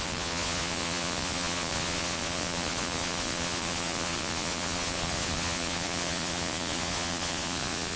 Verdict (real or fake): fake